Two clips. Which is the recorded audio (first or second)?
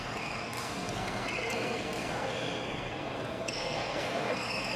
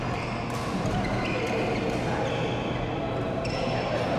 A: second